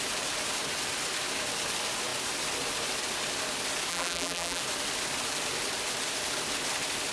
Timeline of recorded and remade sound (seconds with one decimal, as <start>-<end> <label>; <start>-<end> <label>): 0.0-3.9 recorded; 3.9-4.6 remade; 4.6-7.1 recorded